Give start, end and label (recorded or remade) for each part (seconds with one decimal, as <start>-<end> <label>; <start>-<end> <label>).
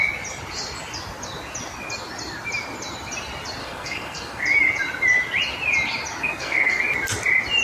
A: 0.0-3.6 recorded; 3.6-4.4 remade; 4.4-6.2 recorded; 6.2-6.8 remade; 6.8-7.6 recorded